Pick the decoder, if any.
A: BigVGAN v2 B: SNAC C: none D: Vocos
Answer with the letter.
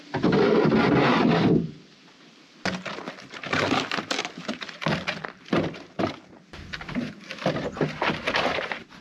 C